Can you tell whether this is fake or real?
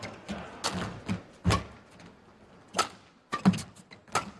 real